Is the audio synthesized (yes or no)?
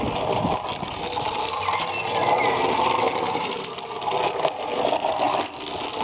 no